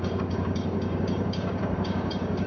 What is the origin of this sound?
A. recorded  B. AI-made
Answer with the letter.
B